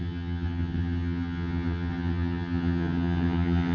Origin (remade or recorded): remade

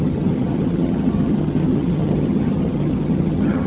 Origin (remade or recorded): remade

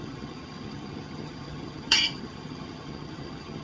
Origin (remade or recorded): remade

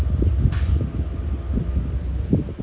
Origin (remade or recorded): recorded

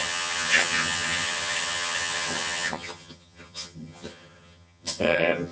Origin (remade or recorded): remade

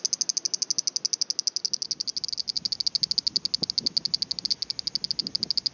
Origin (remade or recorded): recorded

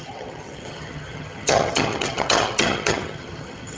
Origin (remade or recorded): remade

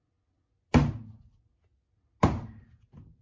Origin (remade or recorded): recorded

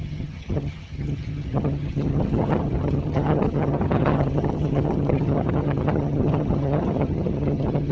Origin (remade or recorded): remade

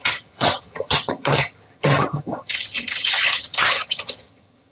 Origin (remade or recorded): remade